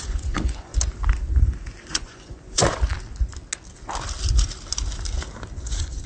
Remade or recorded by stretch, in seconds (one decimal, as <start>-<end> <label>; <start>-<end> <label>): 0.0-0.7 remade; 0.7-1.9 recorded; 1.9-2.6 remade; 2.6-5.6 recorded; 5.6-6.1 remade